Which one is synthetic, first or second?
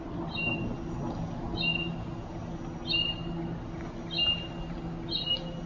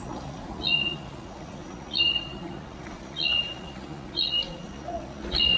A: second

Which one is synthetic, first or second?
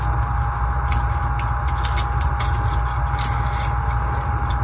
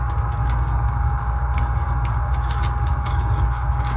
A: second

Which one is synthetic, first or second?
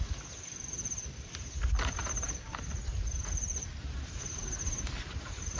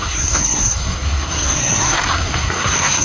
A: second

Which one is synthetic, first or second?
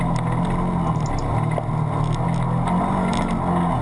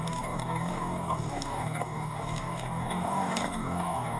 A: second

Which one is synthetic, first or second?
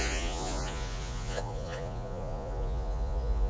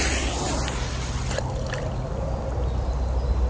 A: first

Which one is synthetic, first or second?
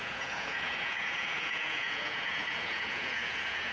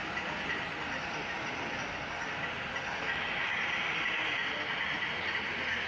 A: first